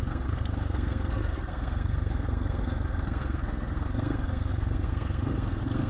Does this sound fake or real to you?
fake